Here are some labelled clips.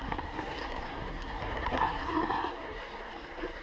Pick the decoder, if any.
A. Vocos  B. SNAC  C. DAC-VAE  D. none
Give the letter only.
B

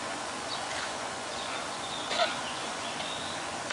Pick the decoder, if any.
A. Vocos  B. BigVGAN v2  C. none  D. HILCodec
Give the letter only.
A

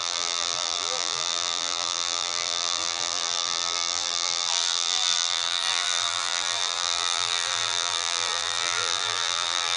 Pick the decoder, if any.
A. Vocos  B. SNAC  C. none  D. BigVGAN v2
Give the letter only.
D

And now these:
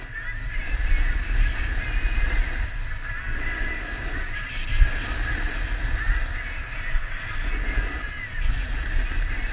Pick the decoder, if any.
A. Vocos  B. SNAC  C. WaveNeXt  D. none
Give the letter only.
D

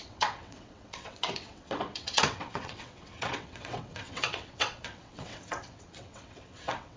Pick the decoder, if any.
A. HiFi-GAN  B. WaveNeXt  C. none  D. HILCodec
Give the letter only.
B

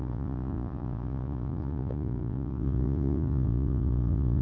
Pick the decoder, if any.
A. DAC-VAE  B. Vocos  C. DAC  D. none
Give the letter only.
B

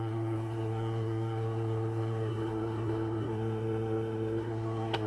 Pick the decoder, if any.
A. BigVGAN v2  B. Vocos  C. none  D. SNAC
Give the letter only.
D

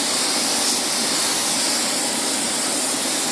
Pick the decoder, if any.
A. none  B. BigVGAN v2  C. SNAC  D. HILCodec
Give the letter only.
A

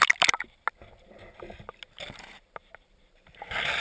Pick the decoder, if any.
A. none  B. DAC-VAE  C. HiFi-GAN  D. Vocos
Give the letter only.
A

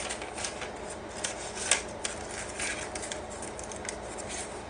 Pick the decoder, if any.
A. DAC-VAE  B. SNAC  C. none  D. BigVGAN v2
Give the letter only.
C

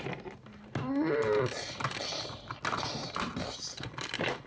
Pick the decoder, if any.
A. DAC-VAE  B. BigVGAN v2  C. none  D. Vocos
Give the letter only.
C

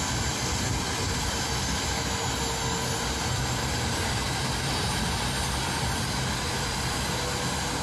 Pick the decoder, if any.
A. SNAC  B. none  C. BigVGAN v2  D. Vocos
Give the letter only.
B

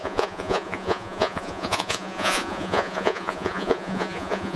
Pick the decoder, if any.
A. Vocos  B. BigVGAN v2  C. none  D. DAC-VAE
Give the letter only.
A